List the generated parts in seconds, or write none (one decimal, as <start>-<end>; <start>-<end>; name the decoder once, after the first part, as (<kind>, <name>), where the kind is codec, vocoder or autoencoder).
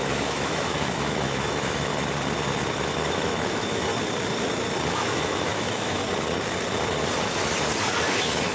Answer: 0.0-1.9 (autoencoder, DAC-VAE); 2.9-3.9; 4.9-6.0; 8.0-8.5